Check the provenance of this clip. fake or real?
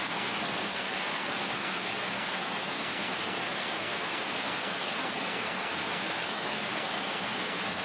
fake